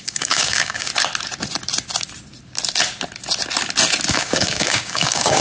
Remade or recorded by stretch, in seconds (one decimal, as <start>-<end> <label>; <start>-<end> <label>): 0.0-0.9 remade; 0.9-4.1 recorded; 4.1-5.4 remade